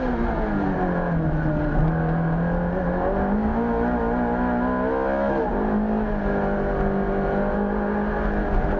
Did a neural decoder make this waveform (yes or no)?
no